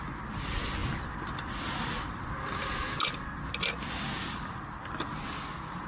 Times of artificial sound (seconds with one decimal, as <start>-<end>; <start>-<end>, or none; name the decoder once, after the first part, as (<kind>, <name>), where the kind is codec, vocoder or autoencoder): none